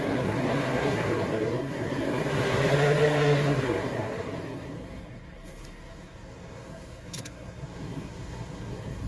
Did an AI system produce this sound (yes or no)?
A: yes